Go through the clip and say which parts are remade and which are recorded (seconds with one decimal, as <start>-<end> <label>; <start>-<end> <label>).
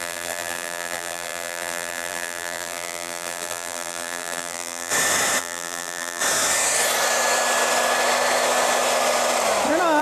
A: 0.0-4.9 remade; 4.9-5.4 recorded; 5.4-6.2 remade; 6.2-10.0 recorded